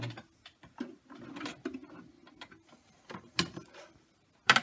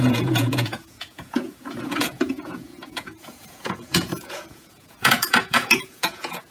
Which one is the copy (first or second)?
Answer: second